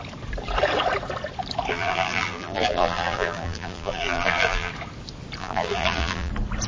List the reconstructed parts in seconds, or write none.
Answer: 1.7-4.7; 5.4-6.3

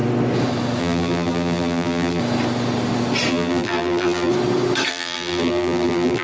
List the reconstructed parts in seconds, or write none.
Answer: 0.8-2.2; 3.3-4.3; 4.9-6.2

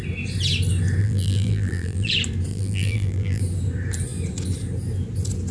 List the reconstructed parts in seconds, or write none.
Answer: 1.0-2.1; 2.5-3.4

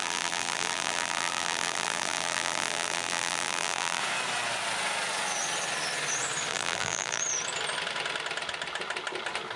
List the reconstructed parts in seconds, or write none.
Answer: 0.0-4.0; 6.5-7.2

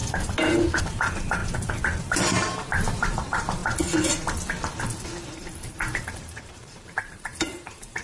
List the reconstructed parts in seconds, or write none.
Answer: 0.8-1.4; 2.0-3.6; 5.7-8.0

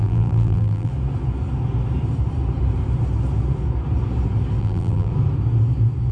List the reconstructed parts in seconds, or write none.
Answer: 0.0-0.9; 4.6-5.1

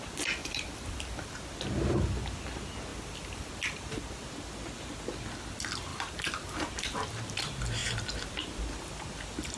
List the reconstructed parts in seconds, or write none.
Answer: 0.4-1.3; 2.9-3.5; 5.9-6.7

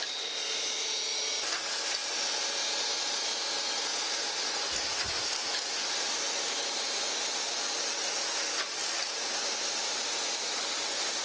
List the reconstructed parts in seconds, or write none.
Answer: 2.0-2.9; 3.9-4.6